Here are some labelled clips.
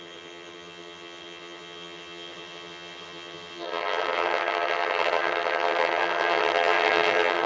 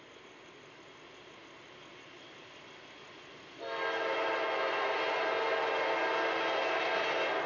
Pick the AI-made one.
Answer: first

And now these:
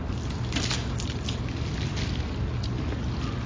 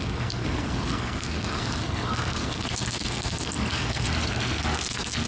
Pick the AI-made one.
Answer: second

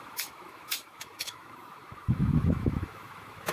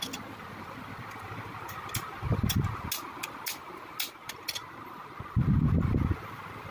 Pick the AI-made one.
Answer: first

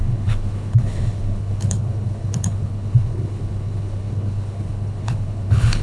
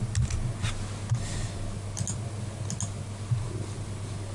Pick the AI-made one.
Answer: first